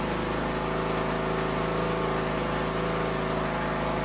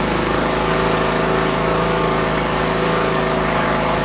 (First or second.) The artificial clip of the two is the second